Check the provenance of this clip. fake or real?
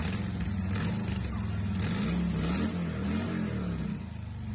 real